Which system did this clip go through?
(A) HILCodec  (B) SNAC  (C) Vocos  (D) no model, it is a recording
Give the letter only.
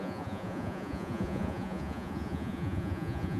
C